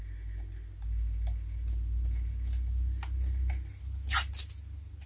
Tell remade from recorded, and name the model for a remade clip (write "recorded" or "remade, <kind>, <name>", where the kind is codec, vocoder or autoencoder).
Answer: recorded